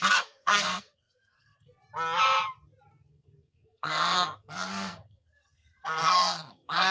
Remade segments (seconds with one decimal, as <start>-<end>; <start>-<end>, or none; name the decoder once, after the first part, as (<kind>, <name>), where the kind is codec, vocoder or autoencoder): 0.0-1.8 (codec, SNAC); 2.9-6.9